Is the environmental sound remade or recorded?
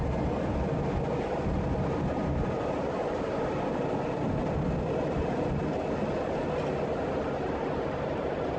recorded